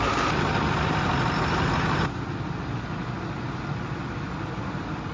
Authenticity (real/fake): real